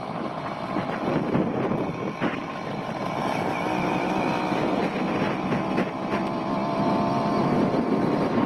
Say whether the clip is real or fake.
real